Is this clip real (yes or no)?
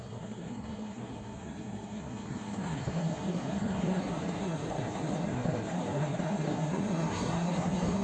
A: no